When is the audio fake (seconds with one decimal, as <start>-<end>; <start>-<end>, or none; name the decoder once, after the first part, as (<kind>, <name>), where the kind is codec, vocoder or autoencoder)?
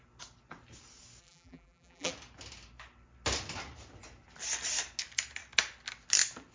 1.2-2.1 (vocoder, BigVGAN v2)